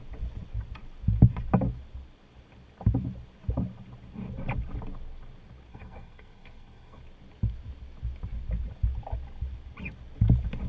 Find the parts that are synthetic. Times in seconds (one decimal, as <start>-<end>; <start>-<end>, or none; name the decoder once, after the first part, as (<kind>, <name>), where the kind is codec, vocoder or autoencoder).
5.7-7.0 (codec, SNAC)

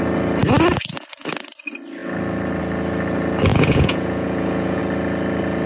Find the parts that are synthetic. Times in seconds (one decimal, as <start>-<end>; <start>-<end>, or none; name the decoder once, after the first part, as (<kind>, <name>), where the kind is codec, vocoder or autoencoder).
3.5-4.8 (vocoder, Vocos)

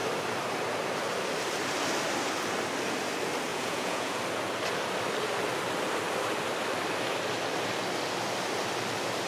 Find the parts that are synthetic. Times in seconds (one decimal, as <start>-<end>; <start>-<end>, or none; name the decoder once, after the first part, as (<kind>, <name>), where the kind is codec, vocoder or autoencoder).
3.5-4.2 (vocoder, Vocos)

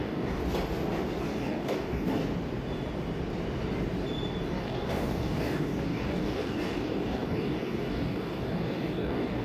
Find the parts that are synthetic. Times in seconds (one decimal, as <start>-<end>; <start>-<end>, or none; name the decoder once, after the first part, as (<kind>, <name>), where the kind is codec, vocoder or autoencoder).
0.0-0.4 (codec, DAC); 1.2-2.2; 4.6-9.4